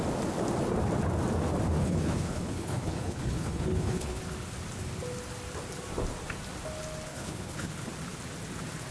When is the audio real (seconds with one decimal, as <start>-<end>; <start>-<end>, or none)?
0.0-1.8; 4.2-7.1; 7.7-8.9